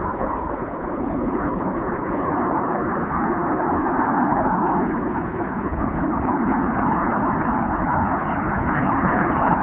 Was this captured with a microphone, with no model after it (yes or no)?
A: no